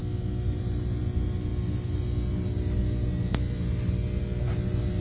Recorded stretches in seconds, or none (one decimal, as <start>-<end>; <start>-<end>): 0.0-5.0